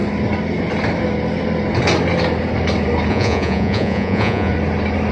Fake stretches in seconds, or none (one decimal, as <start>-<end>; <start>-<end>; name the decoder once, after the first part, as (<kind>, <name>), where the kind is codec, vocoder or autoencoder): 3.1-4.5 (vocoder, Vocos)